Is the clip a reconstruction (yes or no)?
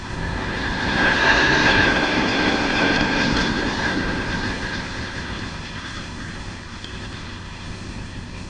yes